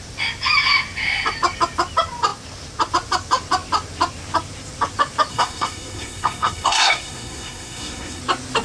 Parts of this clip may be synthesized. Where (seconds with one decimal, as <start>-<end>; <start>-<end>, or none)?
5.3-8.2